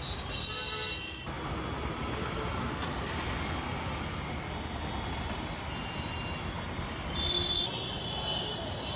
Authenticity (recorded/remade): recorded